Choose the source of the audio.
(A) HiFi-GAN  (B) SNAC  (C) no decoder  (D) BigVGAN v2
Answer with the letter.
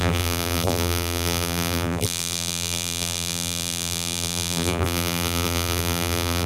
D